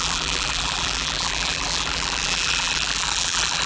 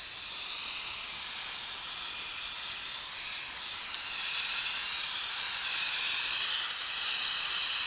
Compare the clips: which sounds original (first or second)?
second